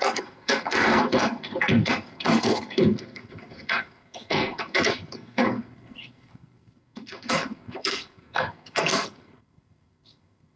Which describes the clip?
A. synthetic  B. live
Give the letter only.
A